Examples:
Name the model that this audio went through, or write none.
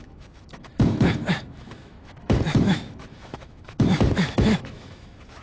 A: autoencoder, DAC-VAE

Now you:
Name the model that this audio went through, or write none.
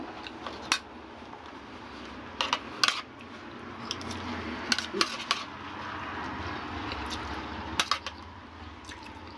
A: none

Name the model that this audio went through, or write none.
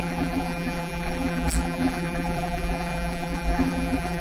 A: vocoder, BigVGAN v2